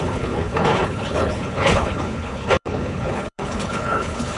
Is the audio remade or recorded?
remade